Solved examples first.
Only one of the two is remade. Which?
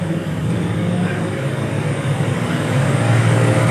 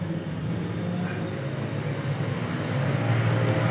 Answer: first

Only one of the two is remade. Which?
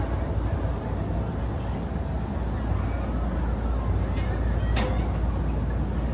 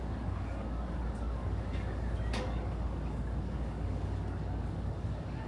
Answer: second